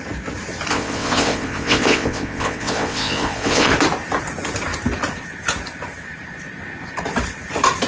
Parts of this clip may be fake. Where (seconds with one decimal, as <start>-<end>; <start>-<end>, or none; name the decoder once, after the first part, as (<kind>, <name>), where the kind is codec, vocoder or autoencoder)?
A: 0.7-3.7 (vocoder, WaveNeXt)